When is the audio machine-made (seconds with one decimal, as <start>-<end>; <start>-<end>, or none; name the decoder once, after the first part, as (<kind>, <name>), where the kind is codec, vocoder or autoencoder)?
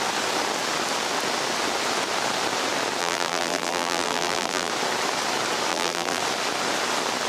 3.0-4.7 (vocoder, BigVGAN v2); 5.7-6.2